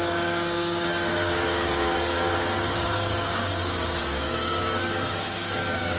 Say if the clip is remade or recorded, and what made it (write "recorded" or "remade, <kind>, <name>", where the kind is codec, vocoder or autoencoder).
remade, codec, DAC